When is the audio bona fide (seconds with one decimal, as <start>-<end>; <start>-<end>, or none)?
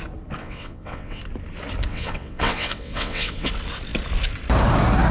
0.0-0.4; 1.2-1.9; 3.5-5.1